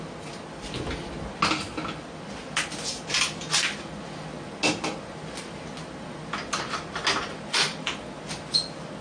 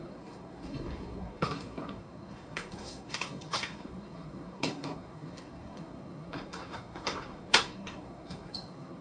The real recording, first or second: first